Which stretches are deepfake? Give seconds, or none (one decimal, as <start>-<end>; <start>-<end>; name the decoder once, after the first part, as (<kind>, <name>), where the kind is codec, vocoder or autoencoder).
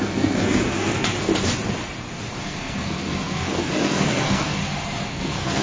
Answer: 0.0-1.3 (codec, SNAC); 2.4-4.6; 5.1-5.6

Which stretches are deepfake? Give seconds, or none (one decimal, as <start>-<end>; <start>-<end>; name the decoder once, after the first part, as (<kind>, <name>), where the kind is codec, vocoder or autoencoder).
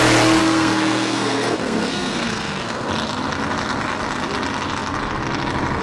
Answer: 0.4-2.9 (codec, SNAC)